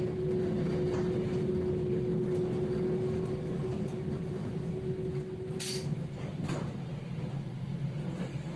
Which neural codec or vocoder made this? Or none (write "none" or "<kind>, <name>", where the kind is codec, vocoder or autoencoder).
none